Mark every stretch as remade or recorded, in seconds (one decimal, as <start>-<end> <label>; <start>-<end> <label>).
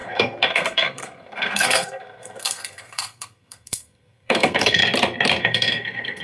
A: 0.0-4.8 remade; 4.8-5.4 recorded; 5.4-6.2 remade